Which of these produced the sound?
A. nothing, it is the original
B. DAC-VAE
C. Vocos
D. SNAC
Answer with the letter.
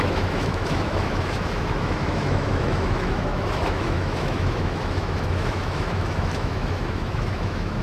B